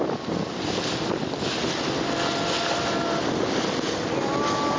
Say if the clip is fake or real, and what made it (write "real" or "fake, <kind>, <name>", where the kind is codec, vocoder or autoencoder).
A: real